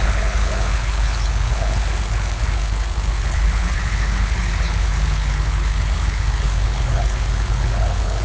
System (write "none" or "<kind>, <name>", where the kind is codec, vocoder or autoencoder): codec, HILCodec